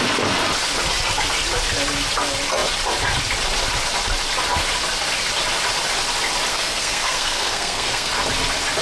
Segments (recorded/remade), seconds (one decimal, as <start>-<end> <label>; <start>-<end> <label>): 0.0-6.5 recorded; 6.5-8.1 remade; 8.1-8.8 recorded